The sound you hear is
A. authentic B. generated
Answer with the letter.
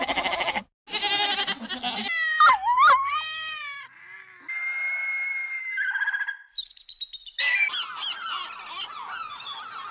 A